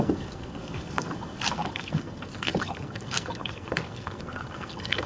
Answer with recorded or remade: remade